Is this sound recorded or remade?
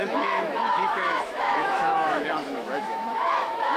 remade